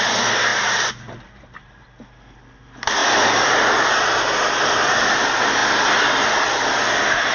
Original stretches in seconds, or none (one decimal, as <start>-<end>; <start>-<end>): 0.0-0.5; 1.8-7.3